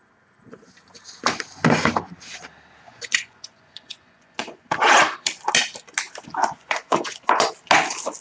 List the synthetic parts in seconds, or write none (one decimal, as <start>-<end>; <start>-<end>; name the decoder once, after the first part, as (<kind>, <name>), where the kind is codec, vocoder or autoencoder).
2.9-4.6 (vocoder, Vocos); 6.4-7.5